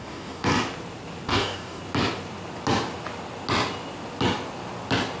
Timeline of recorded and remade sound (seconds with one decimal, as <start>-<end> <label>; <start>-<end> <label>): 0.0-0.5 remade; 0.5-1.3 recorded; 1.3-1.8 remade; 1.8-5.2 recorded